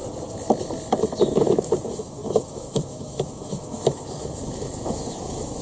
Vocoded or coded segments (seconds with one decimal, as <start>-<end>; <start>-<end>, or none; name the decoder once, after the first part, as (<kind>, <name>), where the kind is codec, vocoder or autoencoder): 1.2-5.6 (autoencoder, DAC-VAE)